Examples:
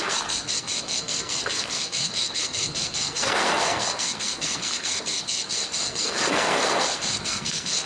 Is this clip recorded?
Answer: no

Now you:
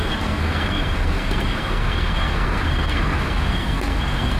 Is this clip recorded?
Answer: no